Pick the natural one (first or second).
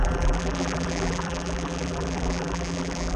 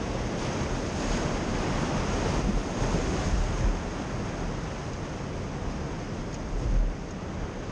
second